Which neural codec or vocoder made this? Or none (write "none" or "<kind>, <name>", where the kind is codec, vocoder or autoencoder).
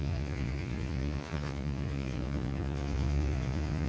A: vocoder, Vocos